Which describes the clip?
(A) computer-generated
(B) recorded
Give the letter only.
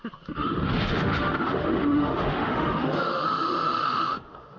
A